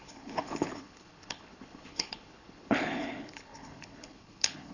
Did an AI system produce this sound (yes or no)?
yes